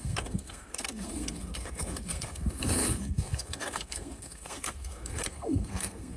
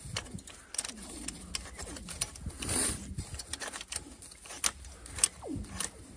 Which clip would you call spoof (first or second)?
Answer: first